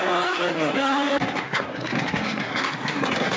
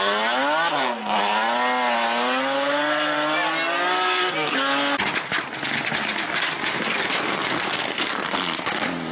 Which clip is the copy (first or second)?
first